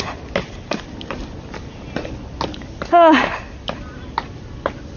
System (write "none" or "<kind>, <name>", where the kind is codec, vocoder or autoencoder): none